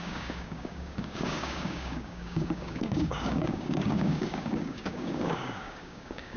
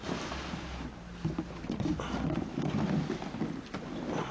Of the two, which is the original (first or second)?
second